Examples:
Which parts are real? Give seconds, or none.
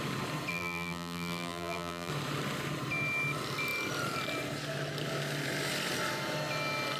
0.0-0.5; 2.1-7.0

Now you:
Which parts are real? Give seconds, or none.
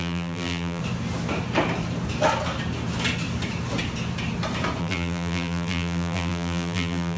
0.8-4.8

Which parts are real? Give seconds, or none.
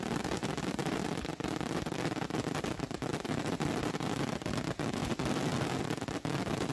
0.0-0.4; 2.6-3.1; 3.8-5.0; 5.6-6.7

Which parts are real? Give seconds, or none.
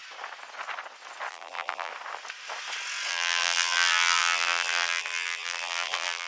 0.0-1.3; 1.9-3.1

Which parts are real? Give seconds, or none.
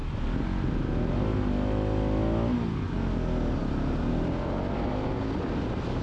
0.0-6.0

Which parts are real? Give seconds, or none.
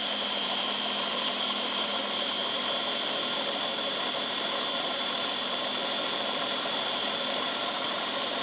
5.7-6.2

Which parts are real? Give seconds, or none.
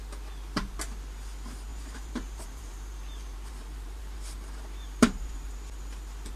0.0-1.7; 5.5-6.4